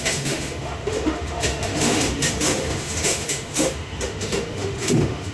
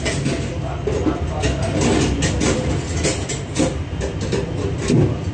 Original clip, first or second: second